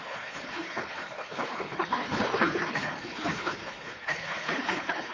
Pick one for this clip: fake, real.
fake